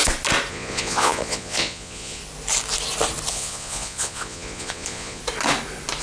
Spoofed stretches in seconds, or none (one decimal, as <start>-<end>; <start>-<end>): 0.5-2.2; 3.3-5.2

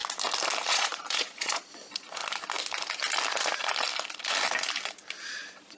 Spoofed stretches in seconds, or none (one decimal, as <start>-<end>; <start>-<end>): 0.7-2.2; 5.2-5.8